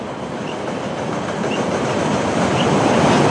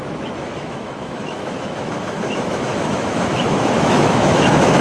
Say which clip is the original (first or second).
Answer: first